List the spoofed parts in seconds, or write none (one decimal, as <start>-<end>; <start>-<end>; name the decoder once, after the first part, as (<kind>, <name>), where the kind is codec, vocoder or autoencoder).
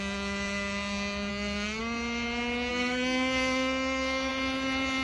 1.3-1.8 (codec, SNAC); 2.7-4.3